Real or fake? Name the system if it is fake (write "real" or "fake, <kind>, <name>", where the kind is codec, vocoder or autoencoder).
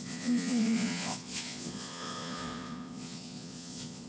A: fake, vocoder, Vocos